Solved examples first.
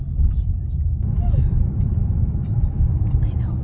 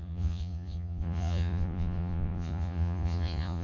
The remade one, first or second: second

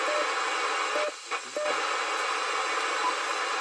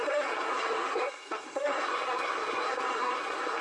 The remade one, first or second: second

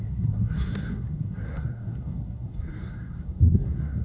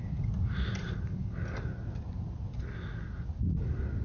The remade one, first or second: first